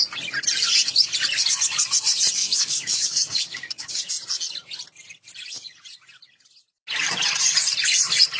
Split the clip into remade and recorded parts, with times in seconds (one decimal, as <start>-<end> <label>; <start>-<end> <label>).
0.0-2.4 recorded; 2.4-4.1 remade; 4.1-8.4 recorded